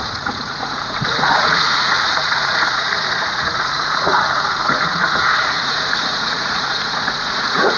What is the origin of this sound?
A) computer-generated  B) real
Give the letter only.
A